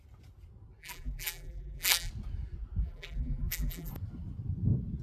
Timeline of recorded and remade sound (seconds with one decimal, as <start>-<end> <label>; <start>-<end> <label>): 0.0-0.8 recorded; 0.8-2.1 remade; 2.1-2.8 recorded; 2.8-3.9 remade; 3.9-5.0 recorded